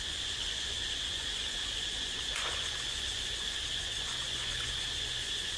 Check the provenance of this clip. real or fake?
fake